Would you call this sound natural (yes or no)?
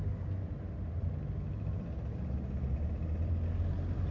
no